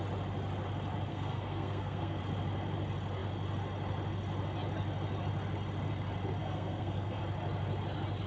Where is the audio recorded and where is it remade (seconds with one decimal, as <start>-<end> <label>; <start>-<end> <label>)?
0.0-1.1 recorded; 1.1-2.2 remade; 2.2-6.4 recorded; 6.4-7.2 remade; 7.2-8.3 recorded

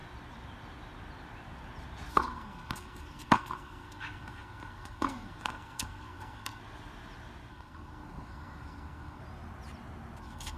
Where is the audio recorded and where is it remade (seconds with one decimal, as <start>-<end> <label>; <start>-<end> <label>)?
0.0-2.1 recorded; 2.1-6.6 remade; 6.6-7.5 recorded; 7.5-9.2 remade; 9.2-10.2 recorded; 10.2-10.6 remade